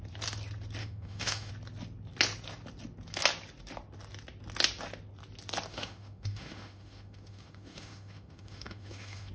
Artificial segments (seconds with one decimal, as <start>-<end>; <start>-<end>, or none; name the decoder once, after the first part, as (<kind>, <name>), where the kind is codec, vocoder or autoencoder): 0.8-1.5 (autoencoder, DAC-VAE); 5.7-9.3